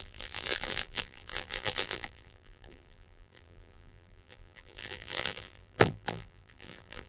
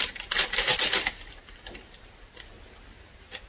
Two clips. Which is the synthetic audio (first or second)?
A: first